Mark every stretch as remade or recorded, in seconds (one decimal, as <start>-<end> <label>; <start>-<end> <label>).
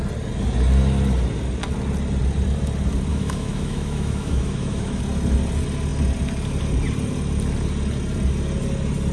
0.0-3.1 recorded; 3.1-5.0 remade; 5.0-9.1 recorded